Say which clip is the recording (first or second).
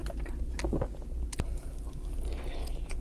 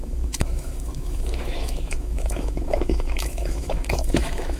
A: first